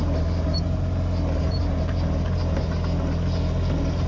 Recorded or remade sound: recorded